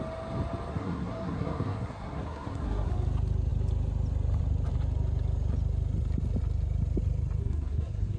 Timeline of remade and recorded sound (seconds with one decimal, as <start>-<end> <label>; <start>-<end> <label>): 0.0-0.7 recorded; 0.7-2.9 remade; 2.9-7.4 recorded; 7.4-8.2 remade